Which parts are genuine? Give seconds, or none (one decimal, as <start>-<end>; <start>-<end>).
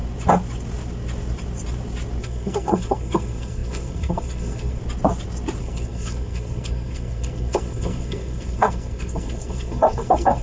0.0-2.2; 4.8-5.6